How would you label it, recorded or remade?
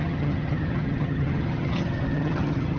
remade